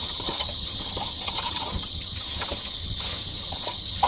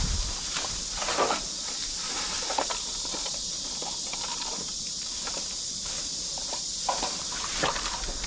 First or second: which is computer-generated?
first